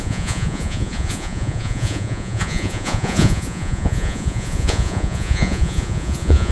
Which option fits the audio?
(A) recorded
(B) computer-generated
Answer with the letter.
B